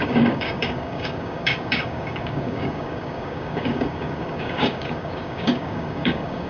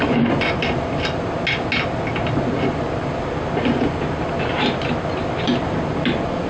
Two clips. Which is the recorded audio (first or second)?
second